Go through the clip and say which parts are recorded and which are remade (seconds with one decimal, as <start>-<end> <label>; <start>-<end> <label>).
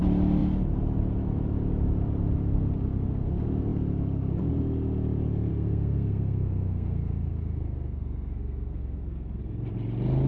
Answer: 0.0-5.5 recorded; 5.5-9.4 remade; 9.4-10.3 recorded